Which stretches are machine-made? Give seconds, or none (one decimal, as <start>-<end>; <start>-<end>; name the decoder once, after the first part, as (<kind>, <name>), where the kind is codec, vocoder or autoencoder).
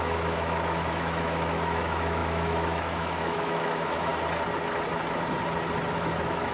0.0-4.1 (autoencoder, DAC-VAE); 5.9-6.5